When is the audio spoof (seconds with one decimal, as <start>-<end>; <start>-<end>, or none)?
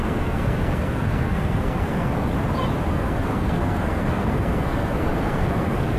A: 0.0-2.3; 2.9-6.0